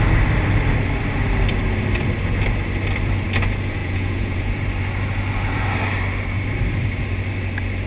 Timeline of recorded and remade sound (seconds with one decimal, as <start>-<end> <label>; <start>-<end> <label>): 0.0-3.8 recorded; 3.8-4.5 remade; 4.5-7.9 recorded